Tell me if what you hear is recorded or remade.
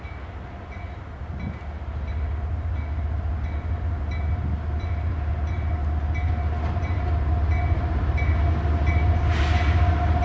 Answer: recorded